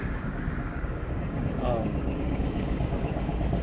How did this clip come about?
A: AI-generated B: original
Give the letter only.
A